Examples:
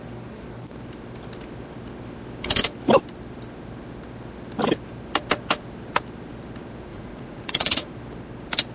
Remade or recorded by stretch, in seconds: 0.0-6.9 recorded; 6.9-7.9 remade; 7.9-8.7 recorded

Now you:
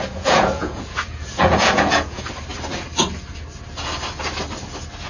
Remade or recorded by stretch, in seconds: 0.0-2.3 remade; 2.3-5.1 recorded

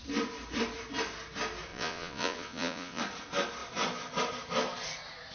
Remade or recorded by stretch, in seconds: 0.0-1.7 recorded; 1.7-3.0 remade; 3.0-5.3 recorded

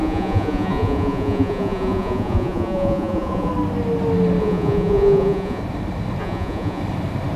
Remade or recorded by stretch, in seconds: 0.0-3.5 remade; 3.5-4.4 recorded; 4.4-5.6 remade; 5.6-6.2 recorded; 6.2-6.8 remade; 6.8-7.4 recorded

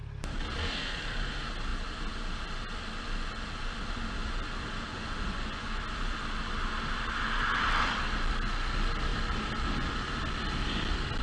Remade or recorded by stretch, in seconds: 0.0-4.9 recorded; 4.9-5.8 remade; 5.8-11.2 recorded

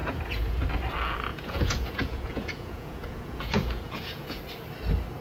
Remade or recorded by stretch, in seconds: 0.0-0.6 remade; 0.6-1.3 recorded; 1.3-4.4 remade; 4.4-5.2 recorded